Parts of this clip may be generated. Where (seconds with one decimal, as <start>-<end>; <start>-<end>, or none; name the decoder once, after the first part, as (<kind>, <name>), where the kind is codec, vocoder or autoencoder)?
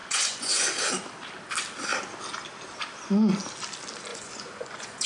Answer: 0.0-0.7 (vocoder, Vocos); 4.1-5.1